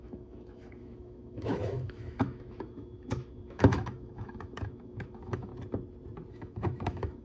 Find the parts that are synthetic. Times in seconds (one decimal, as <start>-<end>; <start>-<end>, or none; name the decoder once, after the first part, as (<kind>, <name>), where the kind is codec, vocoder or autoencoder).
0.0-5.5 (autoencoder, DAC-VAE); 6.3-7.2